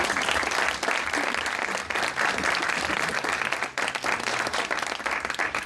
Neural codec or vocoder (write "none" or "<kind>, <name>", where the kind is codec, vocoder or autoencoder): none